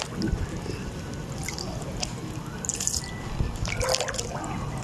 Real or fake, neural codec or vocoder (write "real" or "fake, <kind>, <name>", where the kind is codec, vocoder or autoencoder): real